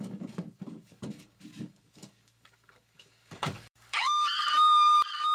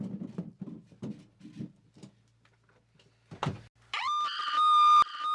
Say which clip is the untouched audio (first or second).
second